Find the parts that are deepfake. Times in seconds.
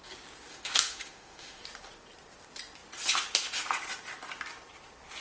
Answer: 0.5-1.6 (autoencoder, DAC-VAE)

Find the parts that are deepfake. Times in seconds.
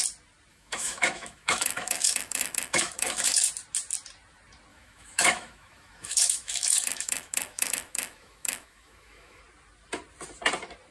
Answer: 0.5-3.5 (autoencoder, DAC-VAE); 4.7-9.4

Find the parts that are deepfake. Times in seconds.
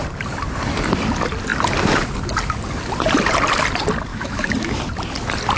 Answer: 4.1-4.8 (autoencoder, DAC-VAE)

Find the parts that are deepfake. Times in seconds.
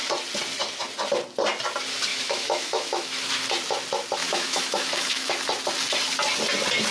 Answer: 2.1-3.3 (autoencoder, DAC-VAE); 4.2-5.3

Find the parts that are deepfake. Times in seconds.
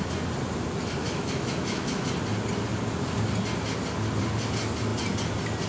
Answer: 1.0-2.1 (autoencoder, DAC-VAE)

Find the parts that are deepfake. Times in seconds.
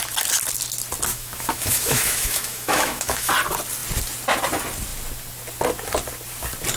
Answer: 1.1-3.3 (autoencoder, DAC-VAE)